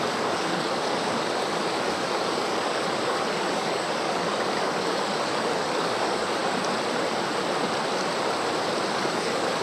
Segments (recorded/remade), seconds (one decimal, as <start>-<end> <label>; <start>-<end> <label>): 0.0-6.4 remade; 6.4-8.9 recorded; 8.9-9.6 remade

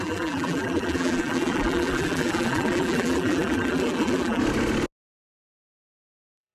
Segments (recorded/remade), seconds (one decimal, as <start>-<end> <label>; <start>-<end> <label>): 0.0-4.4 remade; 4.4-5.6 recorded; 5.6-6.5 remade

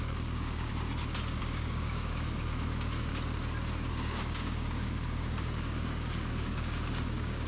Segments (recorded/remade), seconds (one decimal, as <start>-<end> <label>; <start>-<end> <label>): 0.0-0.7 remade; 0.7-1.4 recorded; 1.4-3.1 remade; 3.1-3.9 recorded; 3.9-7.5 remade

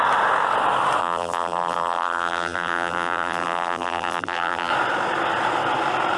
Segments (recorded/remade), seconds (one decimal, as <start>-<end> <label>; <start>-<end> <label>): 0.0-1.0 recorded; 1.0-4.7 remade; 4.7-6.2 recorded

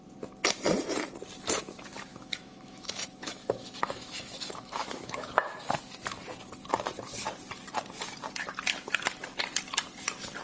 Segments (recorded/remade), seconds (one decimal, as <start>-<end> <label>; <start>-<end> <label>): 0.0-2.1 recorded; 2.1-5.3 remade; 5.3-10.4 recorded

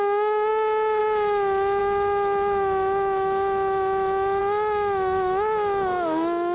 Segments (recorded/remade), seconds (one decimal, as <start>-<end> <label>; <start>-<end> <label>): 0.0-6.5 remade